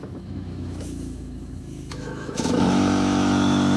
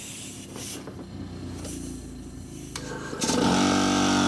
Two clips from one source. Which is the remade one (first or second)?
first